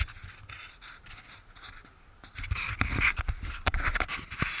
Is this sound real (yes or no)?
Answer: yes